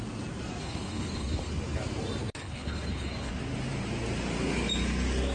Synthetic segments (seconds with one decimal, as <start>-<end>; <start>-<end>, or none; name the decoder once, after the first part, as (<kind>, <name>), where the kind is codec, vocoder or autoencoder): 0.6-1.5 (codec, HILCodec); 2.4-3.3